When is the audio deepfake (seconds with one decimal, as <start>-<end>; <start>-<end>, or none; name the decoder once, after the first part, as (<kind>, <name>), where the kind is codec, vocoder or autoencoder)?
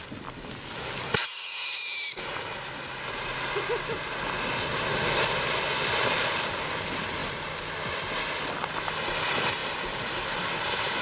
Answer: 0.0-1.9 (vocoder, BigVGAN v2); 5.2-7.2; 9.1-9.6; 10.6-11.0